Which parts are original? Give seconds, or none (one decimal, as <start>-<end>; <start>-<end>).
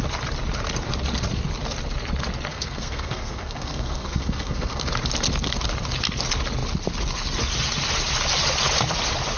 0.0-2.5; 4.9-9.4